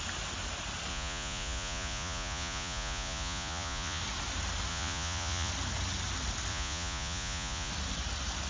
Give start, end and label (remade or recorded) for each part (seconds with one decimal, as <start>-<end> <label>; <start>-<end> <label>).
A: 0.0-0.9 recorded; 0.9-4.0 remade; 4.0-4.7 recorded; 4.7-5.5 remade; 5.5-6.5 recorded; 6.5-7.7 remade; 7.7-8.5 recorded